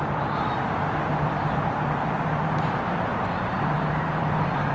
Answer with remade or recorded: remade